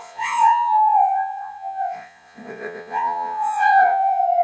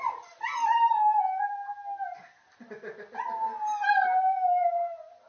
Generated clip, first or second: first